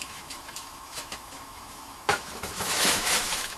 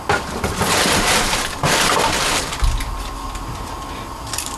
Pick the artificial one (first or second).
first